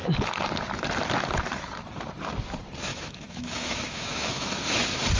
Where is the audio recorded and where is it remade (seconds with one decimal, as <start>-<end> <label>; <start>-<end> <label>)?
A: 0.0-2.9 recorded; 2.9-4.5 remade; 4.5-5.2 recorded